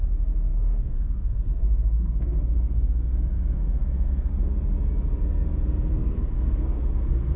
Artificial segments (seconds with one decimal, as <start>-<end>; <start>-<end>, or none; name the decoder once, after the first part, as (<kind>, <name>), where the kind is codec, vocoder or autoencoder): 0.0-4.3 (codec, SNAC); 5.9-7.4